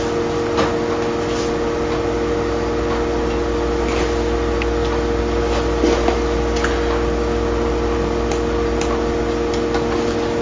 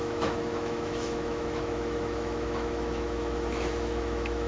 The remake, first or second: second